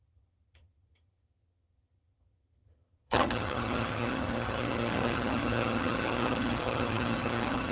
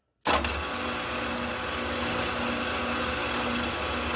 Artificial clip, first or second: first